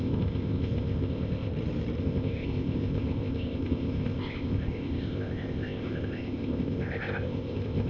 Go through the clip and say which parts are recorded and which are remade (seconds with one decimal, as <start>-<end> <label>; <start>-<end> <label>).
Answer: 0.0-1.5 remade; 1.5-2.0 recorded; 2.0-7.9 remade